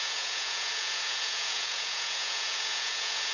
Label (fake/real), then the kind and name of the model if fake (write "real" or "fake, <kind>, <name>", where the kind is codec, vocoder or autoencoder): fake, vocoder, Vocos